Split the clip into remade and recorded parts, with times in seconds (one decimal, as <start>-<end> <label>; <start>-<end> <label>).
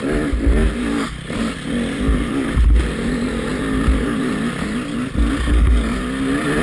0.0-6.6 recorded